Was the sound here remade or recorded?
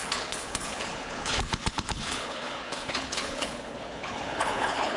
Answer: remade